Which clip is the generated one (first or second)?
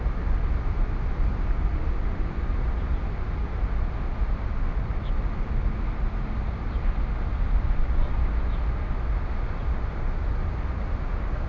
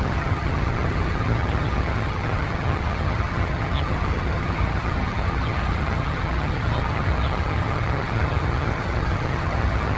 second